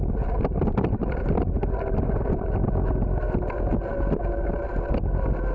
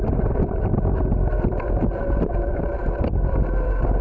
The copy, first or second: second